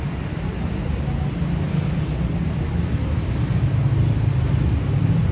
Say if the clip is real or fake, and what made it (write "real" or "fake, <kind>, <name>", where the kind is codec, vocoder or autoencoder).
real